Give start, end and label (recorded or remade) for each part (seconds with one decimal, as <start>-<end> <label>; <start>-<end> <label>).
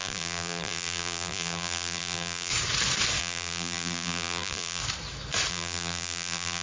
0.0-2.5 remade; 2.5-3.2 recorded; 3.2-4.8 remade; 4.8-5.5 recorded; 5.5-6.6 remade